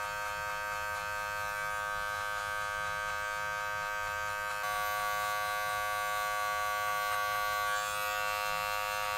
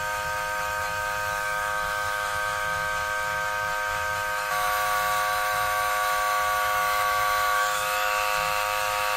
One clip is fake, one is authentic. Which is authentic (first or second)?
first